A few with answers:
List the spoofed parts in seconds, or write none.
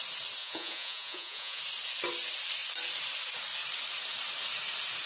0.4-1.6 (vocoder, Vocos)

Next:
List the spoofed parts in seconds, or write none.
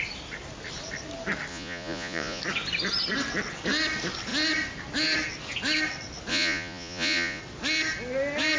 1.5-2.4 (vocoder, Vocos); 6.3-7.4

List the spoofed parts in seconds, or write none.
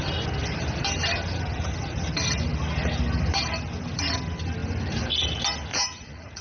5.7-6.4 (vocoder, Vocos)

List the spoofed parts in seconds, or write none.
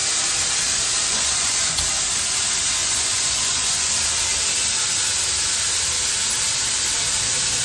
1.1-1.8 (vocoder, Vocos); 2.8-3.9